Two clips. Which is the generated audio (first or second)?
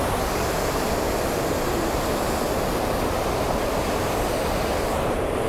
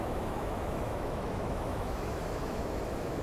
second